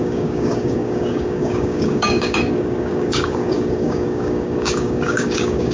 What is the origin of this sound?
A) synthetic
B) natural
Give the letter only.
A